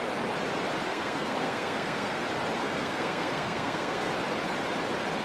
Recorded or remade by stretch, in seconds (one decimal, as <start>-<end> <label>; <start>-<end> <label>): 0.0-0.9 recorded; 0.9-2.2 remade; 2.2-2.6 recorded; 2.6-4.1 remade; 4.1-5.2 recorded